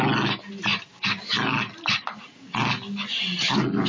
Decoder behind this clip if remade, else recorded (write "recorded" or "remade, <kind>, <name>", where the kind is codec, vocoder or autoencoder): recorded